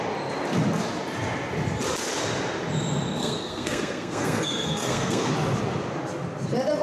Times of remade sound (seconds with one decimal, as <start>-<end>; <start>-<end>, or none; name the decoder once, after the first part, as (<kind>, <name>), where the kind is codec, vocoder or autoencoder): 3.2-5.3 (codec, SNAC)